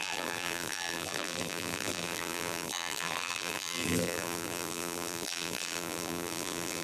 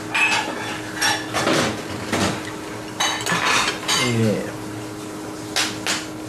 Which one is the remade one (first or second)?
first